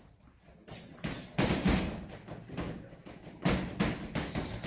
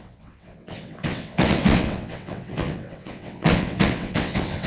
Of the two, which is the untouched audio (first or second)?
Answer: first